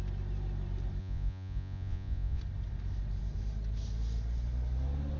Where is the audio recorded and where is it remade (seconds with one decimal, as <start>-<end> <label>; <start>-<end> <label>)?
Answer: 0.0-1.0 recorded; 1.0-2.4 remade; 2.4-5.2 recorded